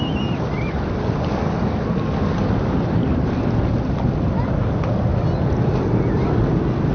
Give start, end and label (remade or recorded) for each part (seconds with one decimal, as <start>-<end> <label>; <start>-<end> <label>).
0.0-6.9 recorded